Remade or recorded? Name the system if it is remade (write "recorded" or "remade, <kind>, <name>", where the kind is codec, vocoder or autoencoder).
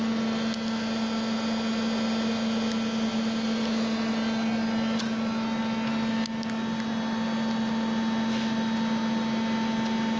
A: recorded